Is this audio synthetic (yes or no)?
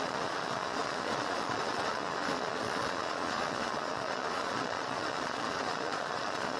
yes